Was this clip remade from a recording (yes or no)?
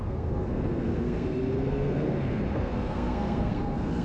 yes